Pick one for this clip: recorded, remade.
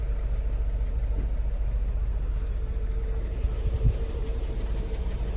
remade